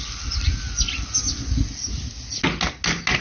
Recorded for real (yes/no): yes